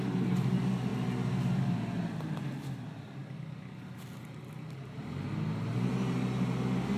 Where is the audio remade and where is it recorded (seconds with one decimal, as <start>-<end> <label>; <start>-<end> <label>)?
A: 0.0-7.0 recorded